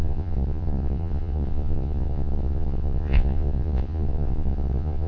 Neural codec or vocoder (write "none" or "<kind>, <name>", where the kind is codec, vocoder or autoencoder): vocoder, Vocos